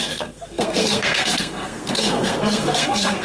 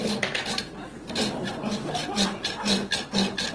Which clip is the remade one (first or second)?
first